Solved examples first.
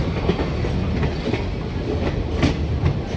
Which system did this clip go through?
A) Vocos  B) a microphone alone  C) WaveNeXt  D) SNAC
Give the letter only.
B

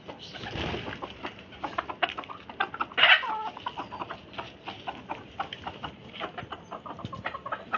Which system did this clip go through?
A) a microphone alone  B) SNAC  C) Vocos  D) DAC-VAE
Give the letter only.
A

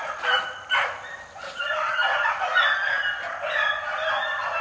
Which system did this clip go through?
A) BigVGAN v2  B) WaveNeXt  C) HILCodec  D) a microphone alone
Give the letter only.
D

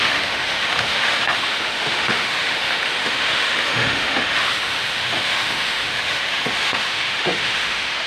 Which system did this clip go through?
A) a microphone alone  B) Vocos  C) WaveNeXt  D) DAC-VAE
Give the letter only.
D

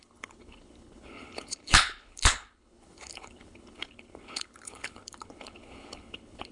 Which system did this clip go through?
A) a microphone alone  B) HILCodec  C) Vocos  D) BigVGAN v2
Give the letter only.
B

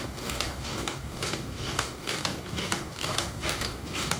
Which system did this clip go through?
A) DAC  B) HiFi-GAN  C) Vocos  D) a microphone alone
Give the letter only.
A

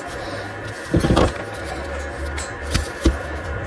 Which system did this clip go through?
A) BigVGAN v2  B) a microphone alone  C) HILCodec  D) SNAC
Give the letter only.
B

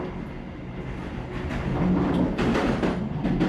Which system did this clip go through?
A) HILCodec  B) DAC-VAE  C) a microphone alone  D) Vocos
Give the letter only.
C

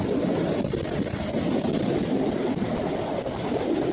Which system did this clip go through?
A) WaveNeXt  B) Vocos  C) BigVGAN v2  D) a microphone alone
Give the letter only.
D